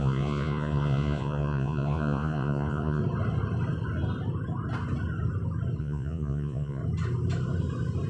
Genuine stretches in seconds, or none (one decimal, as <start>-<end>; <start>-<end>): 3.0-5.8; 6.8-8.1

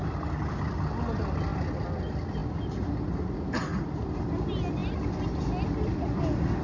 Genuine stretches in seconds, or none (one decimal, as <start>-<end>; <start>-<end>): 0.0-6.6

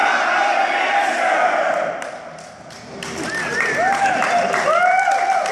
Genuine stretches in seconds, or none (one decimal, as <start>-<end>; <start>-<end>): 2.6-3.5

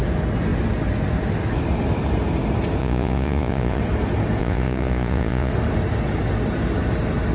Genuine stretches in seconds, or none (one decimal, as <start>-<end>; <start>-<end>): 0.0-2.8; 3.8-4.4; 5.5-7.3